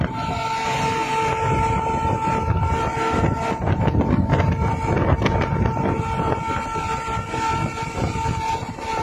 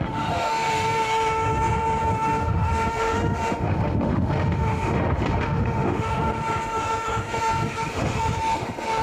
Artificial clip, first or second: second